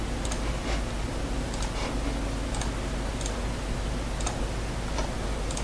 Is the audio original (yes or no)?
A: yes